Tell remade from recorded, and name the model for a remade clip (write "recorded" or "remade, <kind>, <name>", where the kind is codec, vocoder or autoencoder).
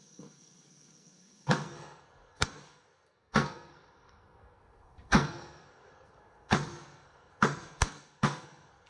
remade, codec, SNAC